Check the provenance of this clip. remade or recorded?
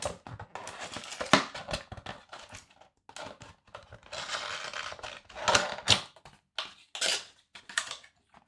recorded